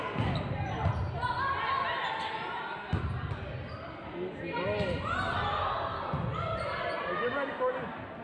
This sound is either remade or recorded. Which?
recorded